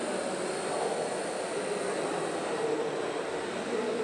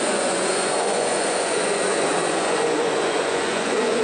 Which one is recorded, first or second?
first